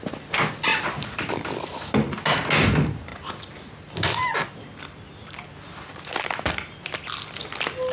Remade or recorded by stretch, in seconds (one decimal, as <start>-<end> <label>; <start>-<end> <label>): 0.0-0.7 recorded; 0.7-1.3 remade; 1.3-7.9 recorded